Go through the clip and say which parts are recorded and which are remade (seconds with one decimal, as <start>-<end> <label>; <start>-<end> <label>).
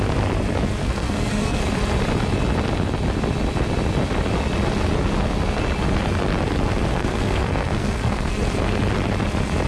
0.0-0.8 recorded; 0.8-1.6 remade; 1.6-6.9 recorded; 6.9-8.3 remade; 8.3-9.7 recorded